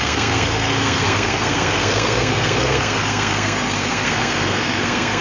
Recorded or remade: remade